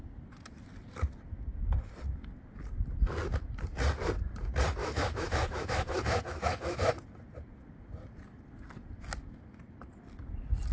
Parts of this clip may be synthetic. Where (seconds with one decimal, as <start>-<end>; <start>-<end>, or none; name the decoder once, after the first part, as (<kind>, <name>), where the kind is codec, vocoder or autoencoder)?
4.8-6.9 (autoencoder, DAC-VAE)